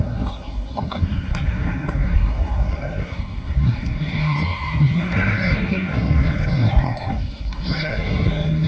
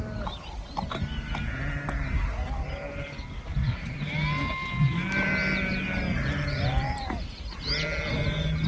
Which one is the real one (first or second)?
second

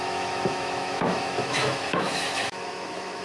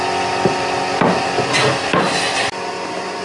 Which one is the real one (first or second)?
second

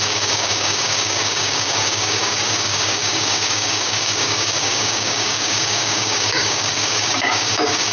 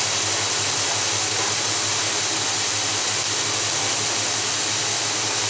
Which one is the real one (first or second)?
second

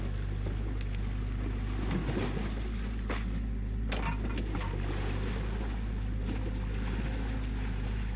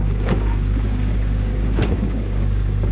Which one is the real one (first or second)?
first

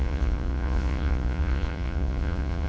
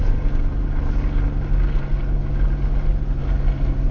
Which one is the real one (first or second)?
second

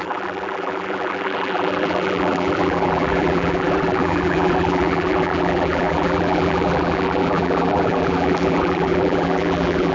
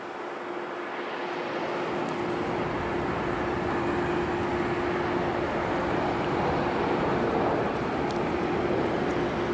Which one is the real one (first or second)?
second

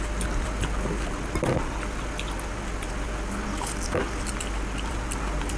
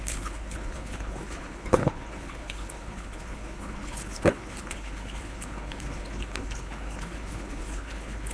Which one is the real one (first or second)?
first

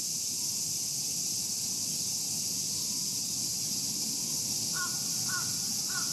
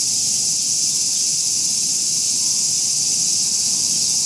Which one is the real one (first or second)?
second